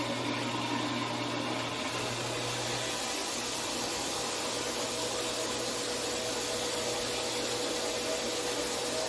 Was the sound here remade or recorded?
recorded